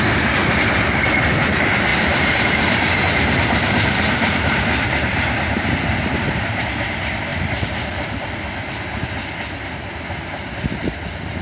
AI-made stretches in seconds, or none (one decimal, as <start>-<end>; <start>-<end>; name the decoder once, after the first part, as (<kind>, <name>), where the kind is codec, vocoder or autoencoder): 1.9-6.6 (vocoder, BigVGAN v2)

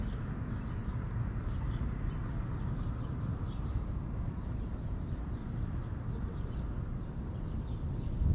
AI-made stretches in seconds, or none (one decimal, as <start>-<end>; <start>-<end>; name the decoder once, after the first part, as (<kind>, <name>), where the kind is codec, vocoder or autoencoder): 0.8-5.8 (vocoder, BigVGAN v2)